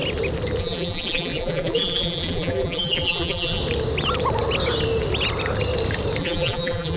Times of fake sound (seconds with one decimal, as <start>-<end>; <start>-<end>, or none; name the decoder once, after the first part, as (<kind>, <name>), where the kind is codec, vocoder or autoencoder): 0.6-3.6 (vocoder, BigVGAN v2); 6.2-7.0